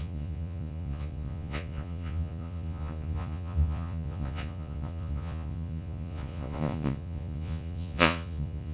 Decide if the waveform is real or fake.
fake